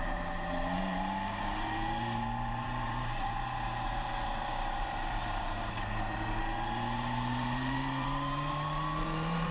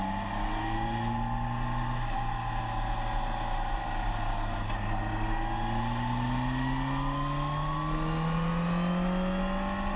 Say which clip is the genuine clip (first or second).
second